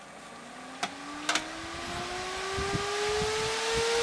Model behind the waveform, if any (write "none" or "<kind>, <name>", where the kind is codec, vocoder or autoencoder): none